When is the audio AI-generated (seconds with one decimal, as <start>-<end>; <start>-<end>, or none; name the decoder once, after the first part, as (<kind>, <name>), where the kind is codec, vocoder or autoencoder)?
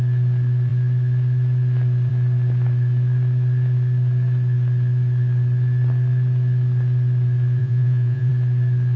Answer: 7.6-8.3 (vocoder, Vocos)